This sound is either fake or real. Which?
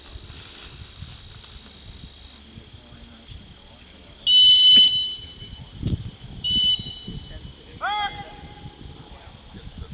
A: real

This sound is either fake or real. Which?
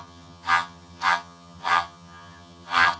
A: fake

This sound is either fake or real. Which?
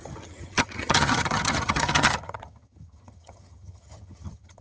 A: fake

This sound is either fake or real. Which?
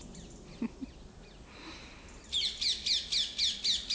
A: real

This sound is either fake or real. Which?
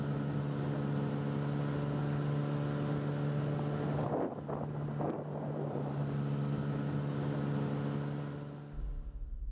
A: real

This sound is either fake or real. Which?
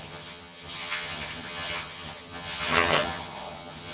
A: fake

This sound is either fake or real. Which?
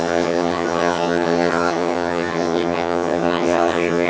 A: fake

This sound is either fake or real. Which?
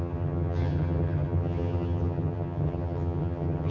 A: fake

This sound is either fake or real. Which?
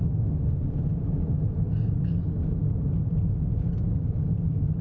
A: real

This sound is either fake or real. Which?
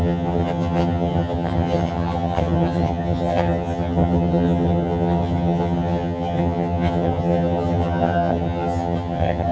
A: fake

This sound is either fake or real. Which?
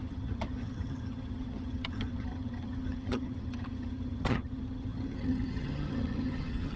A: fake